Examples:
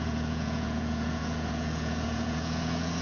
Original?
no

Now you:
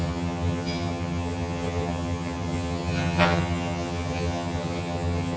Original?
no